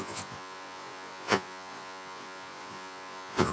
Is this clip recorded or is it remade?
remade